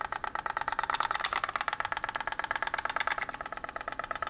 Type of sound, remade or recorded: recorded